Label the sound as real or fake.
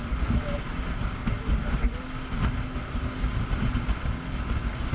real